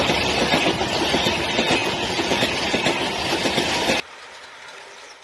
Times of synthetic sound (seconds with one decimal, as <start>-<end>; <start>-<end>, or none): 1.8-2.4